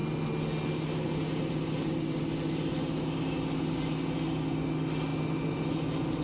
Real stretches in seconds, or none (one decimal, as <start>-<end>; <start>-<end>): 0.0-6.2